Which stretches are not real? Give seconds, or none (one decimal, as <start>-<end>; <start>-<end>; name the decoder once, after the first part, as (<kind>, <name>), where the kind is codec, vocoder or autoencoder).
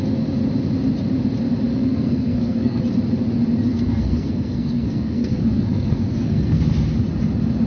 1.7-2.8 (codec, SNAC); 3.7-6.6